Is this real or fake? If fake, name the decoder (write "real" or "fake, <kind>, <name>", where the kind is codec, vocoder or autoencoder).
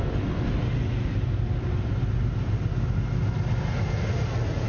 real